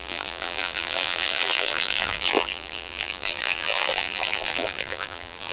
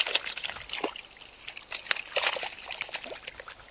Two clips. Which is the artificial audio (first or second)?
first